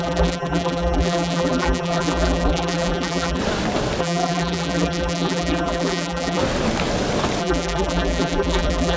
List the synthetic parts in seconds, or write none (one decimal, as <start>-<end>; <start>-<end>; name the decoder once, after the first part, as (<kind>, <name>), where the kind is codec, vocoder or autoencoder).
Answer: 0.0-3.4 (vocoder, BigVGAN v2); 4.0-6.4; 7.4-9.0